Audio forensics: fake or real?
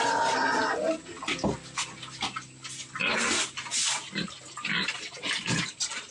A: real